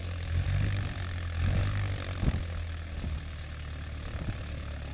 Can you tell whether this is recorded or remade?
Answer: recorded